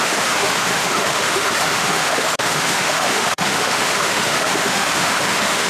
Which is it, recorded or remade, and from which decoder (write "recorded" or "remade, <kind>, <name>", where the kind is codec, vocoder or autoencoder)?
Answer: remade, autoencoder, DAC-VAE